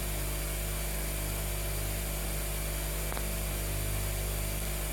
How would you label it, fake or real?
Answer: real